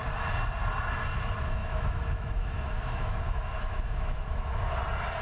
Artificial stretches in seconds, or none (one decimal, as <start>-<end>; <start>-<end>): 1.6-4.7